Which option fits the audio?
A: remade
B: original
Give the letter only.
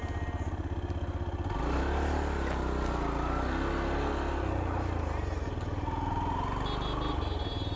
B